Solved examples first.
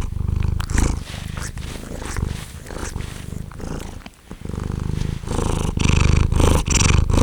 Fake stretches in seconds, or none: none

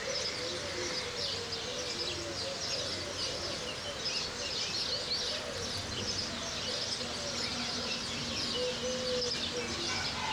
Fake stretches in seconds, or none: 7.5-8.3 (vocoder, BigVGAN v2)

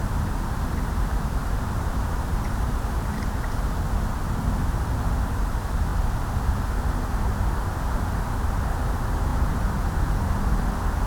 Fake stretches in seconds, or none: 1.4-3.2 (vocoder, BigVGAN v2)

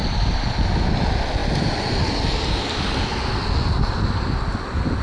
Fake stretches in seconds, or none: none

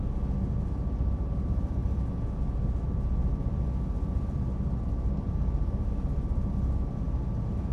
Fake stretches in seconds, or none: none

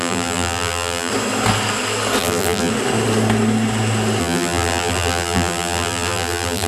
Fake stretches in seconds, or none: 0.0-1.1 (vocoder, BigVGAN v2); 2.2-2.7; 4.2-6.7

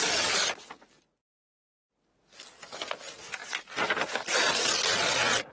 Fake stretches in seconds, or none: none